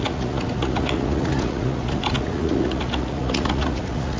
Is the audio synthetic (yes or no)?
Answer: yes